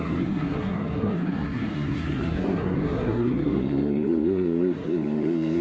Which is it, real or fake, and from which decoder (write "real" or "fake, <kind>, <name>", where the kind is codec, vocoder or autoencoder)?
fake, codec, SNAC